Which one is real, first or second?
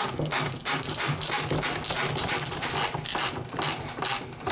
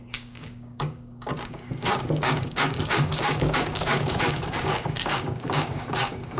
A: first